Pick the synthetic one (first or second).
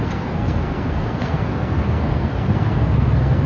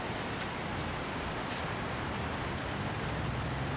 first